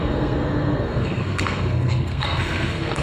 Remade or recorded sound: remade